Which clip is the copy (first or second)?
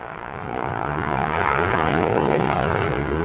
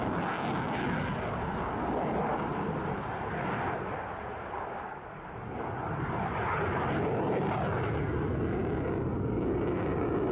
first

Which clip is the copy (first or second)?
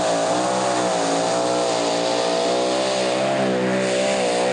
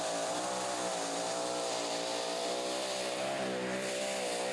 second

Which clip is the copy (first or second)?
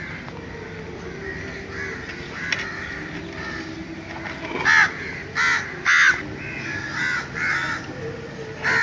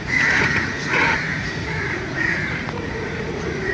second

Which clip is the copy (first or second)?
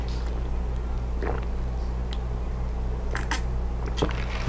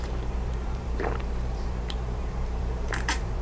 second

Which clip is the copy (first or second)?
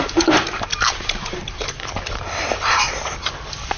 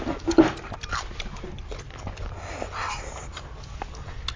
first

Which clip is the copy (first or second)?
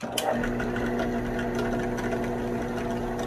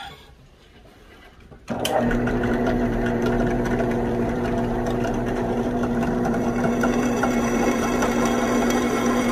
second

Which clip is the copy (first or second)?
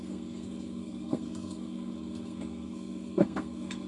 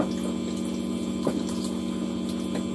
first